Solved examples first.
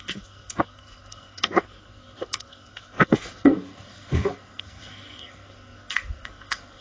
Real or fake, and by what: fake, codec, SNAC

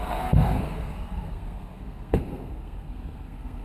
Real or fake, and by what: fake, codec, SNAC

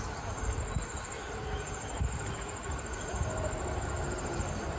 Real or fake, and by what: real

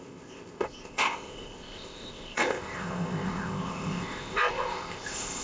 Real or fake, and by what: fake, codec, ZipCodec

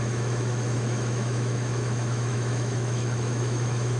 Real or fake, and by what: fake, autoencoder, DAC-VAE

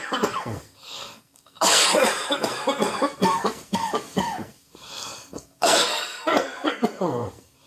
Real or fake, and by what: fake, codec, SNAC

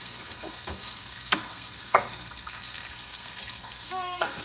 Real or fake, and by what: fake, codec, SNAC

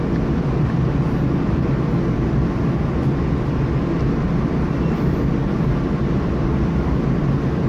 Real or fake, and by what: real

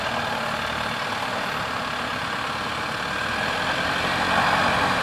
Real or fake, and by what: real